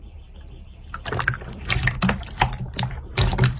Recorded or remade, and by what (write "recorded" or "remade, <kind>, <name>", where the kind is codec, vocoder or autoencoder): remade, vocoder, BigVGAN v2